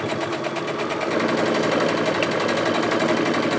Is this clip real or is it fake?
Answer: real